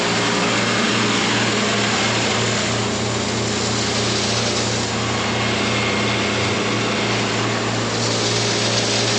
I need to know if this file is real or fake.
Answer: real